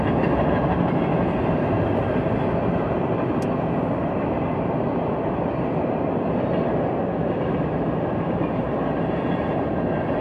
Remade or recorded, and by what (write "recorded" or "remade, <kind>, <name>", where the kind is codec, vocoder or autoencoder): recorded